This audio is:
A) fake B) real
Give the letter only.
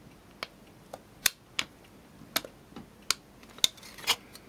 B